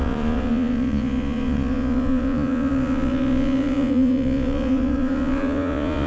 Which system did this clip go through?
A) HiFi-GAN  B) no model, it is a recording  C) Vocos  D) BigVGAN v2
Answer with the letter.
C